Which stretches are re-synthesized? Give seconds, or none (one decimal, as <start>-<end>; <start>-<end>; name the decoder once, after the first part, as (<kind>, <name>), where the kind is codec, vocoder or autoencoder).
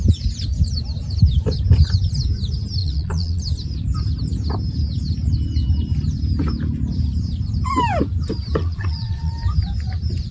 2.8-3.4 (vocoder, Vocos); 8.6-9.3